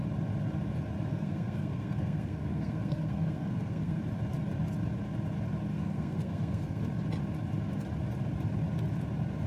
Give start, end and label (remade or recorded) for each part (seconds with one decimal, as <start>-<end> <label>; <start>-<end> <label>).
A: 0.0-1.1 recorded; 1.1-4.0 remade; 4.0-5.7 recorded; 5.7-6.8 remade; 6.8-9.5 recorded